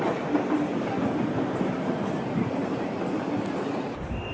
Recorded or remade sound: recorded